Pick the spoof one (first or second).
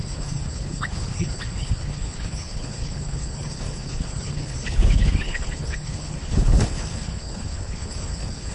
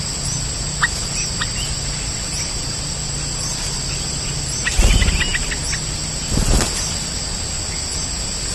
first